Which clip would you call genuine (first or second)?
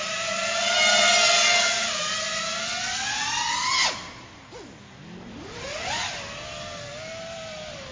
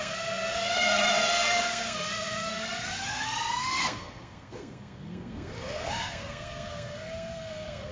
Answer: first